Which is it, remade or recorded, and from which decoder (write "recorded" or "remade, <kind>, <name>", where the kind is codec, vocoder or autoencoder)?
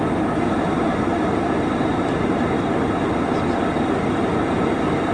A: remade, vocoder, BigVGAN v2